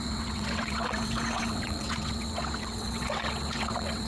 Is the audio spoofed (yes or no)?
yes